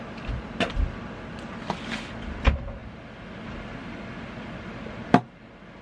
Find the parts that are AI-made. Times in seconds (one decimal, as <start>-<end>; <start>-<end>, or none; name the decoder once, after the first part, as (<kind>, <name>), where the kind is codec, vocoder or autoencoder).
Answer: none